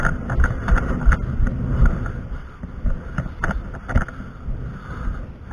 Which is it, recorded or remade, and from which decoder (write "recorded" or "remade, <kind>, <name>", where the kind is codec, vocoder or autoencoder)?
recorded